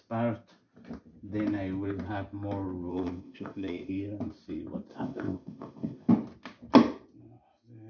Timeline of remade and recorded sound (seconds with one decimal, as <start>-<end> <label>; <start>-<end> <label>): 0.0-2.9 recorded; 2.9-3.9 remade; 3.9-4.9 recorded; 4.9-6.1 remade; 6.1-7.9 recorded